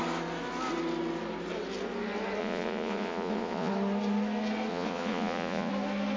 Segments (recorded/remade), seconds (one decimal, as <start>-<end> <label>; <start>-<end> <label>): 0.0-2.4 recorded; 2.4-3.7 remade; 3.7-4.7 recorded; 4.7-5.7 remade; 5.7-6.2 recorded